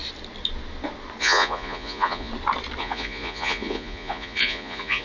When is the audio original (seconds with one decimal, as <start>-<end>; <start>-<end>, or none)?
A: 0.0-1.2; 2.3-2.8

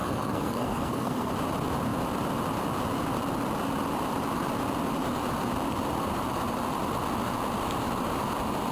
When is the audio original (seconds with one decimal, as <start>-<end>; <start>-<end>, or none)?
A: 1.3-8.7

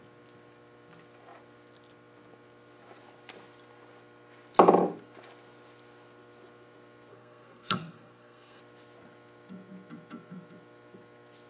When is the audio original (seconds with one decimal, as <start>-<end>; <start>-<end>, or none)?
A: 0.0-7.1; 8.6-11.5

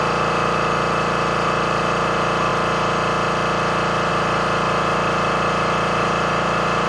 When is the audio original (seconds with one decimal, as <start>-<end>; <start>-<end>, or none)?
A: 2.5-4.1

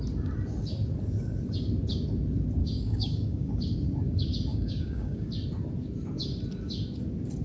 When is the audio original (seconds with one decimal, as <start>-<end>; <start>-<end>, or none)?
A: 0.0-2.6; 3.5-4.5; 5.3-7.4

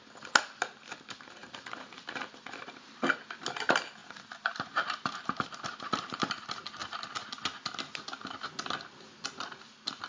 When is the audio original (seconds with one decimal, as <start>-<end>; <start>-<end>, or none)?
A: 0.0-1.4; 3.0-4.0; 6.3-10.1

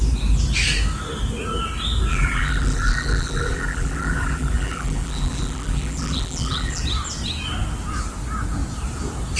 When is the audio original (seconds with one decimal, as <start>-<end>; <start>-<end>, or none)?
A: 0.0-2.1; 6.8-9.4